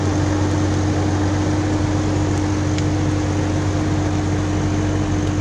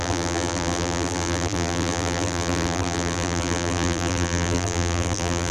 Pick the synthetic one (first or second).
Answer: second